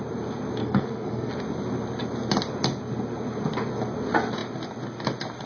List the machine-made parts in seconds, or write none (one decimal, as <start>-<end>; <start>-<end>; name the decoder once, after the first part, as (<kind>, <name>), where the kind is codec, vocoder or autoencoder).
0.6-1.3 (codec, SNAC)